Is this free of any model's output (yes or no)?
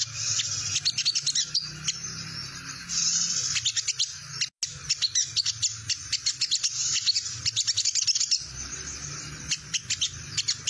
yes